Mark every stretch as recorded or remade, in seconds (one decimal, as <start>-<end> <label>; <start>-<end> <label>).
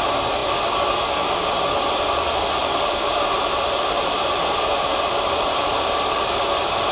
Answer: 0.0-2.6 recorded; 2.6-5.7 remade; 5.7-6.9 recorded